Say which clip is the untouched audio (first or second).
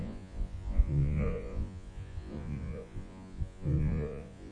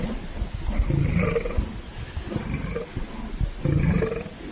second